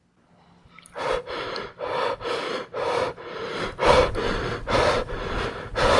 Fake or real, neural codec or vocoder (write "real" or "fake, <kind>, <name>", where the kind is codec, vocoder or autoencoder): real